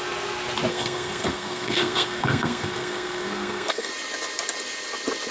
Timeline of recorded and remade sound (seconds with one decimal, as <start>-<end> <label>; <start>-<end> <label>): 0.0-0.7 recorded; 0.7-3.9 remade; 3.9-5.3 recorded

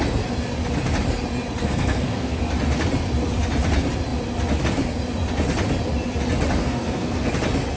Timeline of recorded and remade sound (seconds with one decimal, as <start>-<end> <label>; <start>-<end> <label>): 0.0-1.6 recorded; 1.6-2.4 remade; 2.4-6.6 recorded; 6.6-7.3 remade; 7.3-7.8 recorded

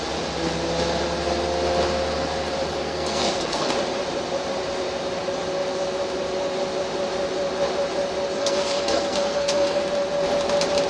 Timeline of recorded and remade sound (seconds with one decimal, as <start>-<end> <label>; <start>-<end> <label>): 0.0-2.8 recorded; 2.8-3.7 remade; 3.7-8.4 recorded; 8.4-9.8 remade; 9.8-10.9 recorded

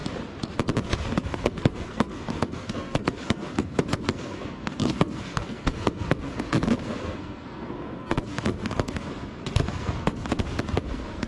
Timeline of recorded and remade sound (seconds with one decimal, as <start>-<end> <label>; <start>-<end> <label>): 0.0-0.8 recorded; 0.8-11.3 remade

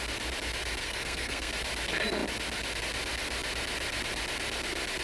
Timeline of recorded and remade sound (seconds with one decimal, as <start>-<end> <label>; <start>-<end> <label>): 0.0-0.8 recorded; 0.8-1.5 remade; 1.5-5.0 recorded

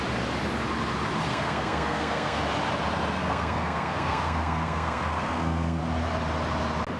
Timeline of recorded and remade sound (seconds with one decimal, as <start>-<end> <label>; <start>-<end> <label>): 0.0-1.3 recorded; 1.3-2.4 remade; 2.4-3.2 recorded; 3.2-5.8 remade; 5.8-7.0 recorded

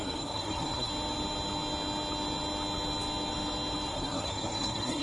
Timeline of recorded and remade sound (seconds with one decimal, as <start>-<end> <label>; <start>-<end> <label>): 0.0-0.9 remade; 0.9-3.9 recorded; 3.9-5.0 remade

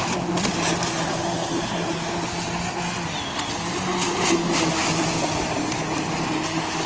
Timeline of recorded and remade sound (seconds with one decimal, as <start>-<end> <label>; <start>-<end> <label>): 0.0-6.9 recorded